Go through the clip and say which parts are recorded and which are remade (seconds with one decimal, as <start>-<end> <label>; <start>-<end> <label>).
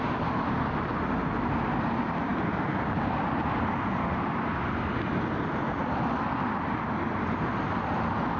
0.0-8.4 recorded